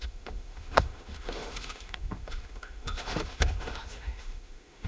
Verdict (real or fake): fake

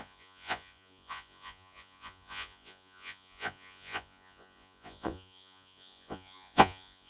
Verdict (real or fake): fake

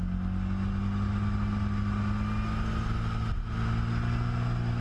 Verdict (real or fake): real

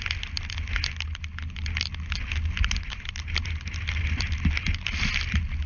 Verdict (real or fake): real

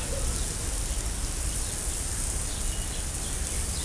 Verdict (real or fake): real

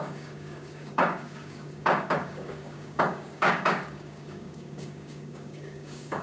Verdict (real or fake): fake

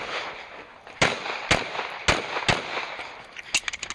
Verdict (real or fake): real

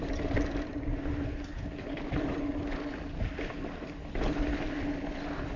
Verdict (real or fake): real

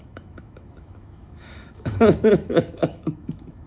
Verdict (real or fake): fake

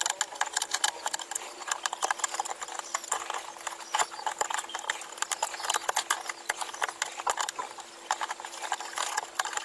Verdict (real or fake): real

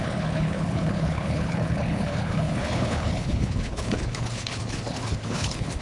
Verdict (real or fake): fake